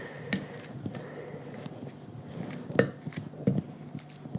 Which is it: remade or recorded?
recorded